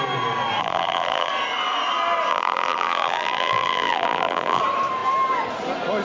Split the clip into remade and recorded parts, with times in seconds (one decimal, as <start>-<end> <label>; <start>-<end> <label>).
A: 0.0-0.6 recorded; 0.6-1.3 remade; 1.3-2.3 recorded; 2.3-4.6 remade; 4.6-6.0 recorded